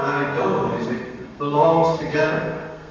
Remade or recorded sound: remade